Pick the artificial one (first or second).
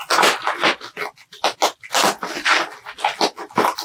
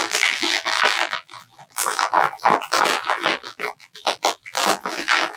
second